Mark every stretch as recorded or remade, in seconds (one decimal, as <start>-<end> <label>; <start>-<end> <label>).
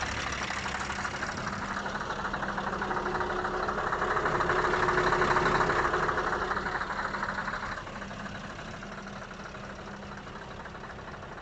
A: 0.0-11.4 recorded